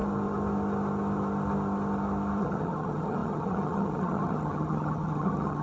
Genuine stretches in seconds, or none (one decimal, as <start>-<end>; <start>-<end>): 0.0-2.4